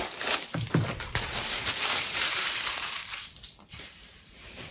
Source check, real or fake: fake